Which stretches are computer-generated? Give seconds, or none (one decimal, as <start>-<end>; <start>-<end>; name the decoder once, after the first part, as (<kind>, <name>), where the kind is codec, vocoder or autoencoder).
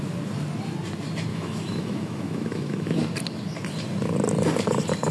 1.3-3.0 (autoencoder, DAC-VAE)